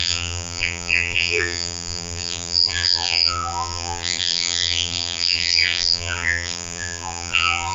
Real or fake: fake